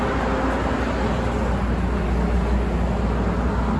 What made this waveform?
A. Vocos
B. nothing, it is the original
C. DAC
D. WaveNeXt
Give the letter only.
B